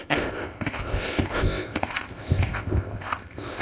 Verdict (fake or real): fake